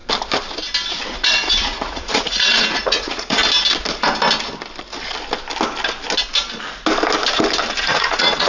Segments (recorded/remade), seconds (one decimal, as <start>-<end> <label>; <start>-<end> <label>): 0.0-1.1 recorded; 1.1-3.4 remade; 3.4-7.8 recorded; 7.8-8.5 remade